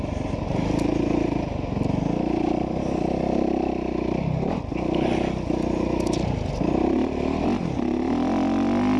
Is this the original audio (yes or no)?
yes